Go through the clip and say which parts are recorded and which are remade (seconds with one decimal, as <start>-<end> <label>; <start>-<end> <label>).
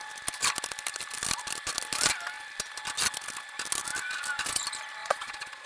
0.0-5.0 recorded; 5.0-5.7 remade